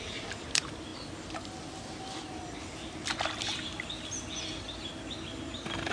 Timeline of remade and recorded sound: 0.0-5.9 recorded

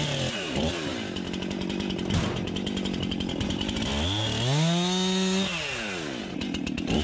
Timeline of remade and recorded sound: 0.0-0.9 remade; 0.9-3.5 recorded; 3.5-3.9 remade; 3.9-6.2 recorded; 6.2-7.0 remade